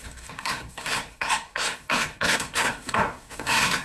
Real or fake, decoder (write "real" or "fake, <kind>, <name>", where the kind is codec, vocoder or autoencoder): fake, codec, SNAC